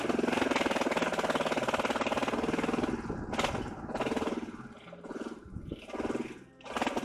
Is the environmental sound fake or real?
real